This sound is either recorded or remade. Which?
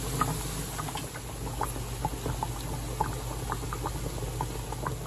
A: recorded